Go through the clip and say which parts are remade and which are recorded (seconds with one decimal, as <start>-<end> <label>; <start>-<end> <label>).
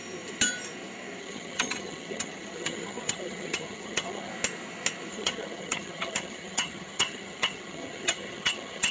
0.0-1.2 recorded; 1.2-4.3 remade; 4.3-5.1 recorded; 5.1-8.9 remade